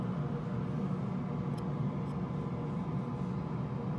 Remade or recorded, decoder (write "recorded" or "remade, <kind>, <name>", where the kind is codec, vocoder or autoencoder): recorded